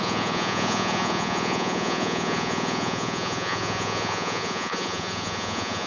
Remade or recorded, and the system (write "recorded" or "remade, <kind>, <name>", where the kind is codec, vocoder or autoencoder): remade, vocoder, Vocos